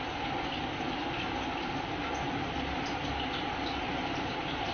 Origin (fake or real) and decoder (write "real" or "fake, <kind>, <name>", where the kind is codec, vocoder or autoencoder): real